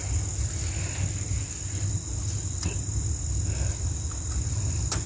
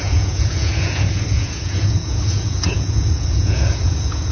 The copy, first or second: second